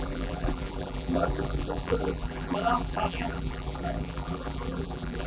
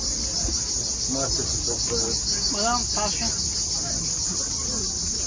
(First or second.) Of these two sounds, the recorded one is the second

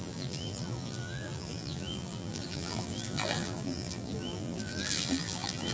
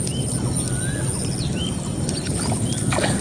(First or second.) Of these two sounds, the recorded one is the second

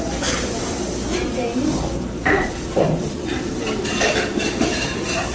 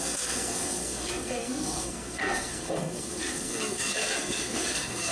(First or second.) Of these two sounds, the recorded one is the first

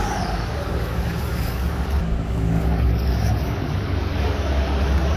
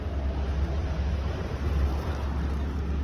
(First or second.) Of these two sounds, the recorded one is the second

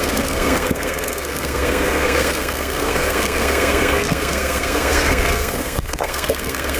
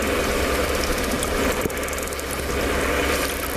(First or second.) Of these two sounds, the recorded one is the second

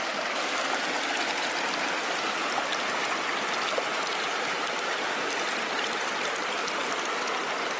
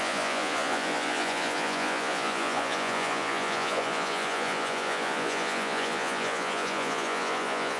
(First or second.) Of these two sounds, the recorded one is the first